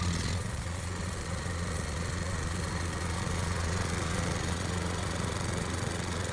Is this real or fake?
fake